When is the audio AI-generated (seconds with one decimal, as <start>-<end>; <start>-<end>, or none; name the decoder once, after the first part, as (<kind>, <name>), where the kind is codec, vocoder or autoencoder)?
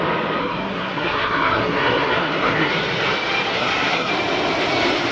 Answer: 0.4-2.7 (codec, SNAC); 3.5-4.1